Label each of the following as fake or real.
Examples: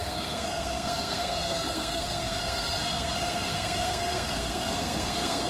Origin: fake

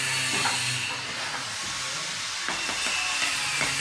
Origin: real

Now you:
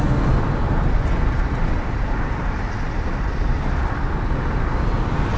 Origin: real